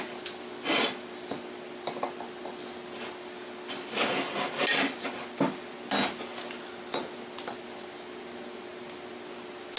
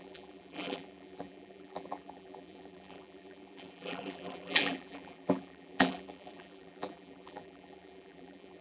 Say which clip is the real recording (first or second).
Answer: first